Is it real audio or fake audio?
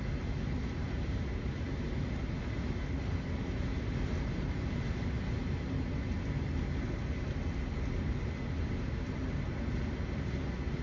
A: real